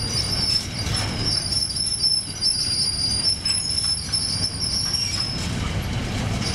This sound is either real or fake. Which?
fake